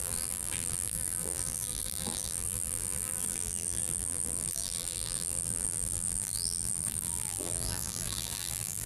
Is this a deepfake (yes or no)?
yes